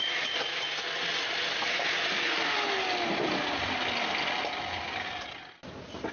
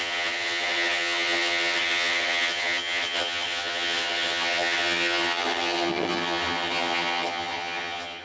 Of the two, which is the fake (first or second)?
second